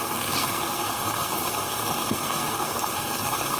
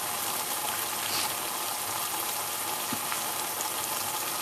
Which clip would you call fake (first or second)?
first